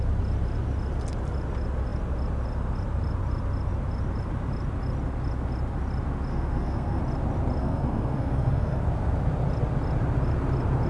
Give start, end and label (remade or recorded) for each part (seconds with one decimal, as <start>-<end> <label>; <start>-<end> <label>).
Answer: 0.0-6.3 recorded; 6.3-7.0 remade; 7.0-7.6 recorded; 7.6-8.8 remade; 8.8-10.9 recorded